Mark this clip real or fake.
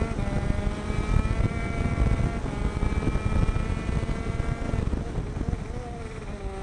real